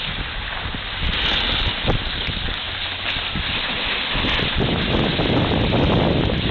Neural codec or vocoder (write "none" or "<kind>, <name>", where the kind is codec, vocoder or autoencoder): none